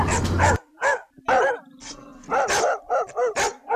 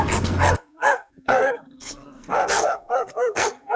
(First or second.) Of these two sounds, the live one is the first